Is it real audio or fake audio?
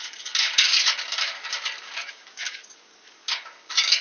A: fake